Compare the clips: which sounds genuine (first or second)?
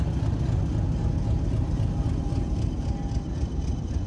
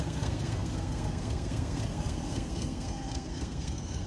first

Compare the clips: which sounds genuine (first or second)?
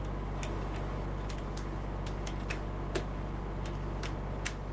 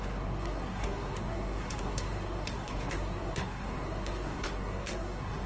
first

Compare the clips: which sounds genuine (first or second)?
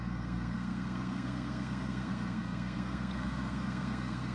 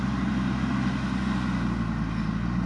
second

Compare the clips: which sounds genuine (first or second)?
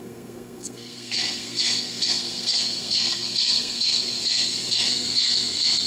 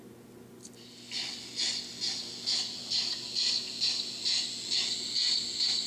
second